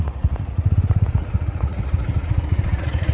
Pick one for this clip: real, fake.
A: fake